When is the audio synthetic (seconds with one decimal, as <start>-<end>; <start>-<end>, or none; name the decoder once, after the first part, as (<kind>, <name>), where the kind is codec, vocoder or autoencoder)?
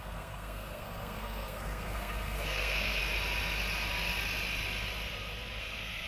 0.0-3.0 (codec, SNAC); 5.6-6.1